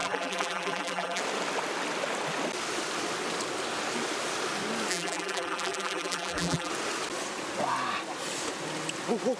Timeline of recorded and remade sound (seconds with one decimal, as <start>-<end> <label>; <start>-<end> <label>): 0.0-1.2 remade; 1.2-4.9 recorded; 4.9-6.7 remade; 6.7-9.4 recorded